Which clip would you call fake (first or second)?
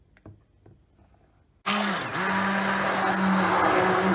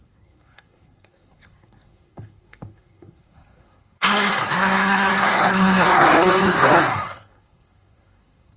second